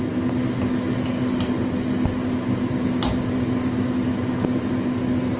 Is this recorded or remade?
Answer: recorded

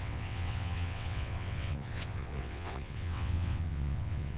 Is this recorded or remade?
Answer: remade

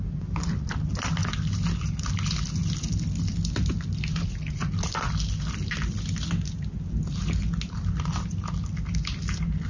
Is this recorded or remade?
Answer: recorded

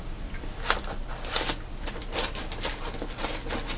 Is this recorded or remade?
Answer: recorded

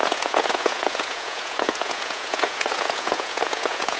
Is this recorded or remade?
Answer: remade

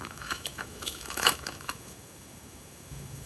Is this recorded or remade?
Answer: remade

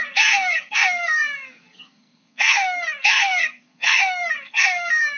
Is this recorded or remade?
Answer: remade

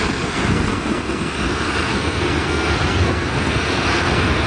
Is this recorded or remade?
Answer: remade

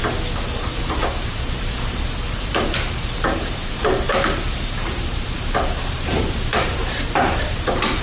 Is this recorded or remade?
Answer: remade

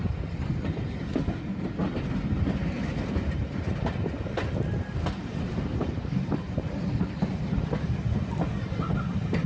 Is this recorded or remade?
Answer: recorded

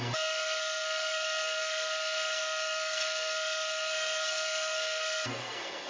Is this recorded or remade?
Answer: remade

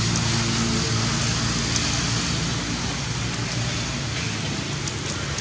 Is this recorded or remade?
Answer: recorded